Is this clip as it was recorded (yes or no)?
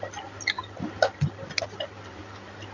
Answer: yes